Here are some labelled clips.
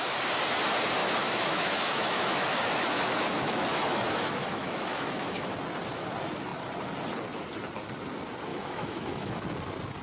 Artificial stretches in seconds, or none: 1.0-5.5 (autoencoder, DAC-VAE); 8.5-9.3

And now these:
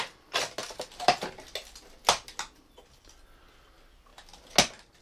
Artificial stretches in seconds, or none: none

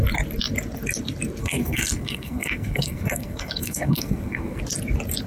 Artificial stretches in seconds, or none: 1.4-4.6 (codec, SNAC)